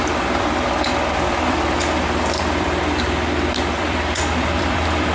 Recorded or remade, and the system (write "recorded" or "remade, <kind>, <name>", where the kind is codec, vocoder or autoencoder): remade, vocoder, BigVGAN v2